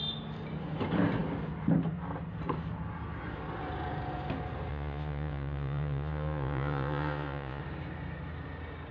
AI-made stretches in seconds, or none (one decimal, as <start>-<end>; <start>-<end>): 4.7-7.6